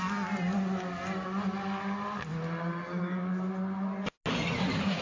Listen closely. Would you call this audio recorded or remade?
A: recorded